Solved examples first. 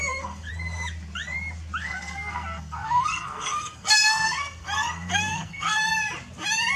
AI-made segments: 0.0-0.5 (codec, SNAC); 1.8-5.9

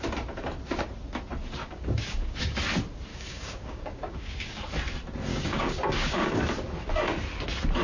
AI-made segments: 1.6-2.4 (codec, DAC); 3.1-4.7; 5.3-6.4

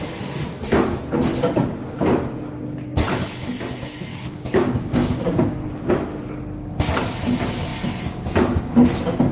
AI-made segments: 4.1-5.9 (codec, DAC)

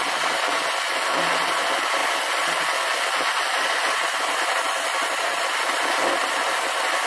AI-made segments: none

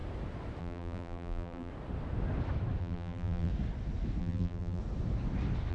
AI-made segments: 0.6-1.7 (vocoder, BigVGAN v2); 2.8-3.5; 4.2-4.8

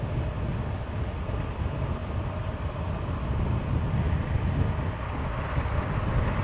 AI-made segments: none

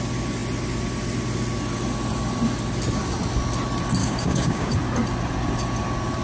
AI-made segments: 4.0-4.7 (codec, DAC)